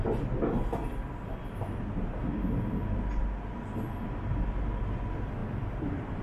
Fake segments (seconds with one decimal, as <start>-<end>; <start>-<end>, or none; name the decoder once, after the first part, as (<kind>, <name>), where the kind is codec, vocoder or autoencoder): 5.4-6.2 (vocoder, BigVGAN v2)

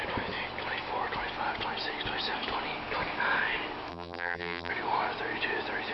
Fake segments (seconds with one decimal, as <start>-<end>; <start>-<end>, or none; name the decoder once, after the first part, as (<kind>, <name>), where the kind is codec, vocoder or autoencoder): 3.9-4.7 (vocoder, BigVGAN v2)